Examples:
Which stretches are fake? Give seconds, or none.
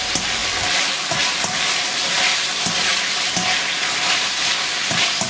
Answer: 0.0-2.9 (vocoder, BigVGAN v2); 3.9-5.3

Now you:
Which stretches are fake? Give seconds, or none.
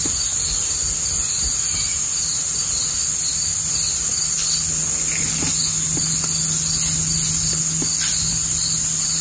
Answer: none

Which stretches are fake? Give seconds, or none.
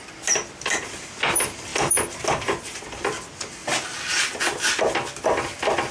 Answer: none